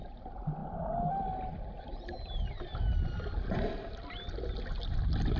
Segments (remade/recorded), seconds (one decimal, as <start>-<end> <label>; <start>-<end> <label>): 0.0-5.4 recorded